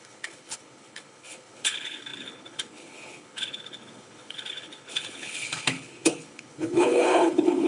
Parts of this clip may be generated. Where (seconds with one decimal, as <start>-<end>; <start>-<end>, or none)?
0.0-7.7

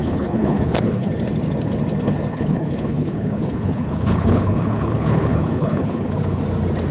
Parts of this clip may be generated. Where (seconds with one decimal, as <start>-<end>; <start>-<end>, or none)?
0.0-1.1; 2.3-6.4

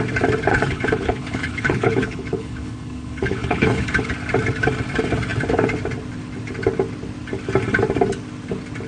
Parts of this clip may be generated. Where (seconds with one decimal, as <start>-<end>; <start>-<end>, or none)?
0.5-4.1

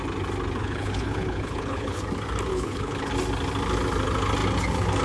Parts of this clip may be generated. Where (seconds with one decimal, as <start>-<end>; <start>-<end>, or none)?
0.6-2.0; 2.5-3.1